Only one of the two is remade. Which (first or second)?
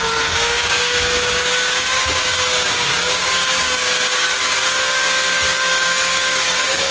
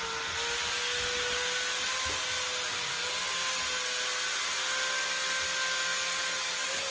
first